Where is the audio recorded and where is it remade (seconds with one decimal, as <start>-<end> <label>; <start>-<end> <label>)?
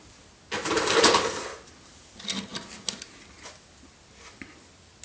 0.0-5.0 recorded